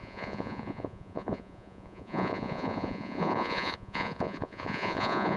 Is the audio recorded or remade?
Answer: remade